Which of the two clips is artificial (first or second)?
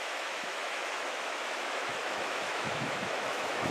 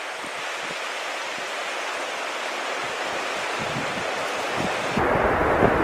first